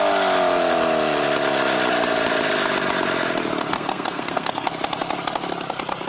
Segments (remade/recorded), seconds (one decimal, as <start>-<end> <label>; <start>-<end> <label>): 0.0-3.7 recorded; 3.7-4.7 remade; 4.7-6.1 recorded